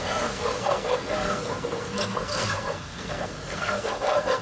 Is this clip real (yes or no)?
no